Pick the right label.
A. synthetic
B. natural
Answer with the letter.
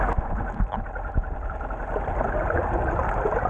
B